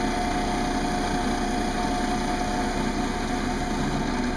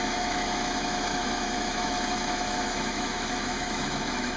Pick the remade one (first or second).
second